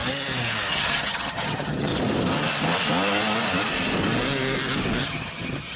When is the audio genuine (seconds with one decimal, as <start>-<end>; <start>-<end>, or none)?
0.0-0.7; 1.9-5.0